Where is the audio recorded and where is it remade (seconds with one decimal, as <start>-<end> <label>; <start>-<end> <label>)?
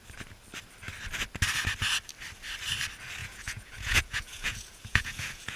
0.0-3.2 recorded; 3.2-5.6 remade